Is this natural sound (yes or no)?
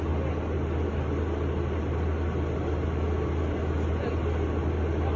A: yes